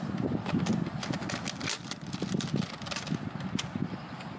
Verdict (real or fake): real